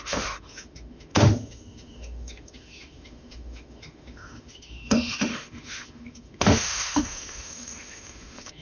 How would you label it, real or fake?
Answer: fake